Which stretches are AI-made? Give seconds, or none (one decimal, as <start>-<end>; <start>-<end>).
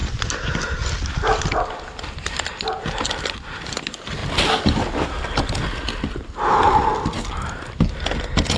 3.8-4.2